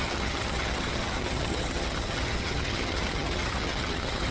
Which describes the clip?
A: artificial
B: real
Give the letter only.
A